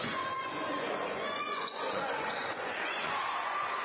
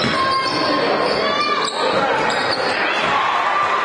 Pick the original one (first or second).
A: second